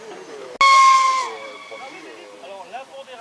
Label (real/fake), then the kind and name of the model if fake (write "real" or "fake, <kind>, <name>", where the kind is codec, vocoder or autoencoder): real